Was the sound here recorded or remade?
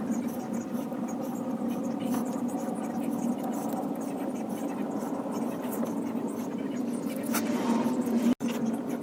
recorded